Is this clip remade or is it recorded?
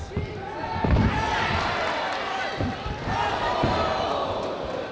recorded